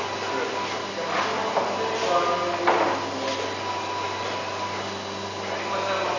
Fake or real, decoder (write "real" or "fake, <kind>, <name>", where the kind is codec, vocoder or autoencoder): real